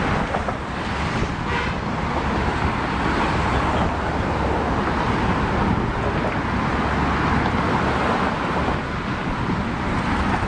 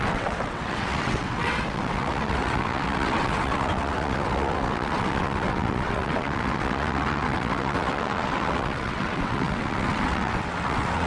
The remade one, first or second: second